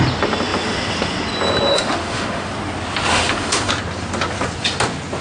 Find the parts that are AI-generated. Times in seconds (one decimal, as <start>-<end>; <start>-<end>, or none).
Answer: 1.7-2.5; 3.1-3.7